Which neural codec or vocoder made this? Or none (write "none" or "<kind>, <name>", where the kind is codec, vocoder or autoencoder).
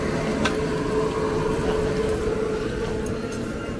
none